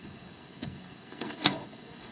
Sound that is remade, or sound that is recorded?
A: remade